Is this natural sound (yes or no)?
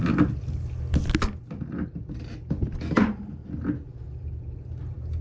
yes